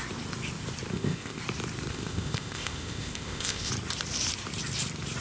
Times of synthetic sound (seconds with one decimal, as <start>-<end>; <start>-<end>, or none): 0.9-1.4; 1.9-3.7